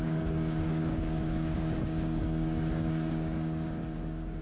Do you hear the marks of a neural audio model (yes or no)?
yes